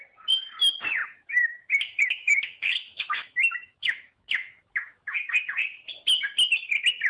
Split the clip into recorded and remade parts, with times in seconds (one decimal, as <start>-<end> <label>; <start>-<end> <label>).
0.0-1.0 recorded; 1.0-5.3 remade; 5.3-7.1 recorded